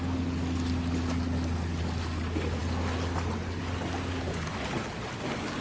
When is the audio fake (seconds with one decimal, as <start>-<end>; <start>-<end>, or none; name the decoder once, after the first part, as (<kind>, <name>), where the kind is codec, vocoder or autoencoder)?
none